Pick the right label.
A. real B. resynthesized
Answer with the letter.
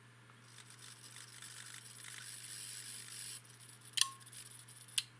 A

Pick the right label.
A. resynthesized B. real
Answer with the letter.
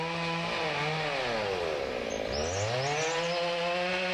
B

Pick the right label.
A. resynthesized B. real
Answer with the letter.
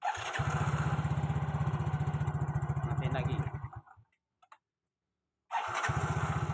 B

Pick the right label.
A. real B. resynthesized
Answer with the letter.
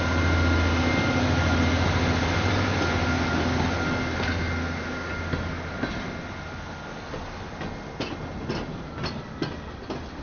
A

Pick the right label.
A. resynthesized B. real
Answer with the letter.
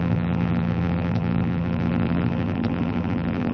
A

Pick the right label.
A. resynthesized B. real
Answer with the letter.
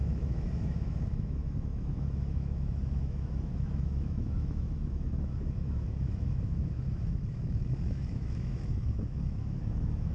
A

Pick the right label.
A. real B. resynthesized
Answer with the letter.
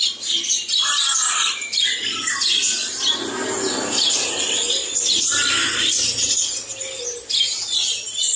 A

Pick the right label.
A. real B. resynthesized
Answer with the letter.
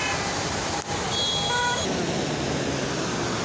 A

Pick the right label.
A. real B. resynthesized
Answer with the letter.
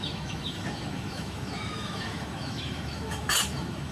B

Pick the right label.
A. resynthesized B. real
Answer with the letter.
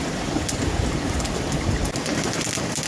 B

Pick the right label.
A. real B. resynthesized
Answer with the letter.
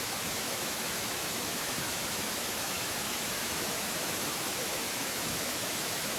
B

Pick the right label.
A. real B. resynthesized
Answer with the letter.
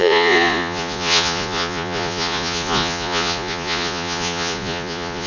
B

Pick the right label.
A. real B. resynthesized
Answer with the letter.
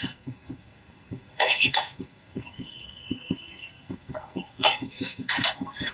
B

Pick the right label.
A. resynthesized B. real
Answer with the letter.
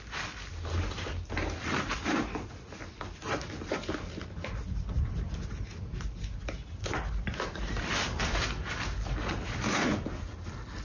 B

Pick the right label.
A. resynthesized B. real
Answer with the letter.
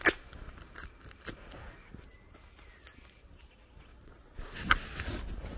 B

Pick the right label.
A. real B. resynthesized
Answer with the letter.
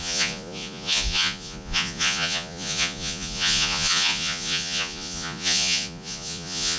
B